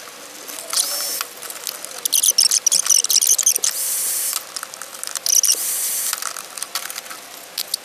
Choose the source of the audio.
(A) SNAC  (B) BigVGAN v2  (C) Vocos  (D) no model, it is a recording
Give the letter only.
D